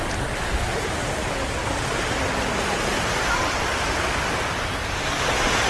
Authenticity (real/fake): real